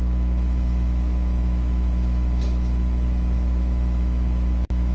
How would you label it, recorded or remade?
remade